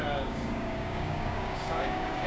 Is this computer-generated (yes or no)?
yes